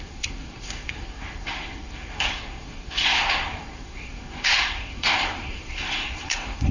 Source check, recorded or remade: remade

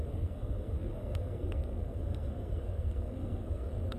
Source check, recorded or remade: remade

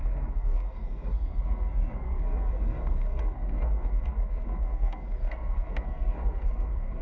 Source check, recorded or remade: remade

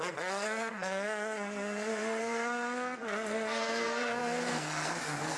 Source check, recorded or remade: remade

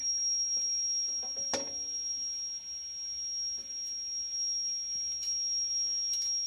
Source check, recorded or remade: recorded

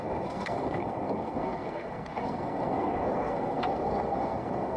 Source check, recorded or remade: remade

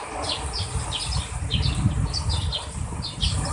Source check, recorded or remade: recorded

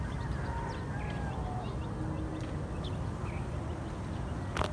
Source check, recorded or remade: recorded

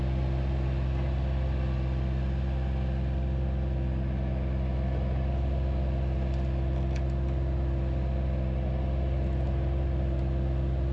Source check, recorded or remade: recorded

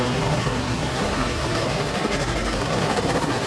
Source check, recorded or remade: remade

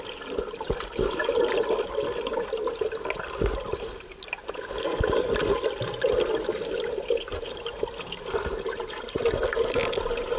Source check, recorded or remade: recorded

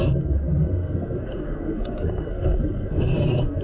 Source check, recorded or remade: remade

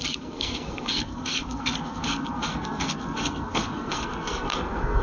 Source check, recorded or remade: remade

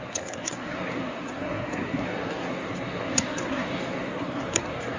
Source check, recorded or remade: remade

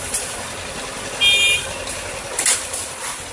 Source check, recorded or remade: recorded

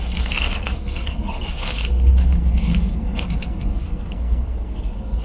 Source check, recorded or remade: remade